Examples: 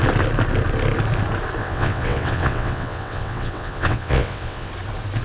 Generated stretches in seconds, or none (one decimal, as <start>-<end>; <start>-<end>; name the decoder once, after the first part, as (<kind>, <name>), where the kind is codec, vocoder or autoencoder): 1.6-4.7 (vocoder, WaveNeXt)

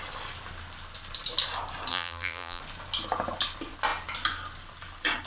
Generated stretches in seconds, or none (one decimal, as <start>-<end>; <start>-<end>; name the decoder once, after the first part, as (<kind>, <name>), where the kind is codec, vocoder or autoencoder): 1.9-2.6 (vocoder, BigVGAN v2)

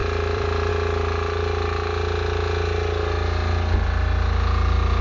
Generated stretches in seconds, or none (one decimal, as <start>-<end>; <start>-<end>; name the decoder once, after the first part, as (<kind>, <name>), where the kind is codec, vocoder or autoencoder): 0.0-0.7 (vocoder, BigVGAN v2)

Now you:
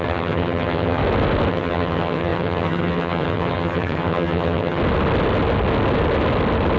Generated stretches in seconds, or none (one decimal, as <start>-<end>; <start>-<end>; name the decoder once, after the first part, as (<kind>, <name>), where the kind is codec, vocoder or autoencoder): 0.0-1.0 (vocoder, HiFi-GAN); 1.5-4.8

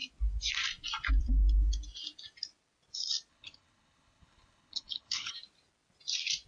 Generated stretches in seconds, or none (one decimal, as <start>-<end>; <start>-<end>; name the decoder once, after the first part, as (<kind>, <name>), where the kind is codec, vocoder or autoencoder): 3.3-5.3 (codec, HILCodec)

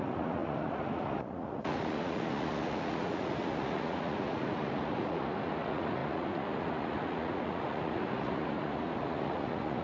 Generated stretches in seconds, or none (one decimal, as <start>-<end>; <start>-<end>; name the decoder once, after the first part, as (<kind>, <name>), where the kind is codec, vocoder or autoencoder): 0.0-9.8 (vocoder, Vocos)